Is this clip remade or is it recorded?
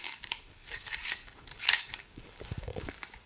remade